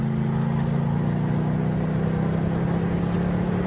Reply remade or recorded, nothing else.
recorded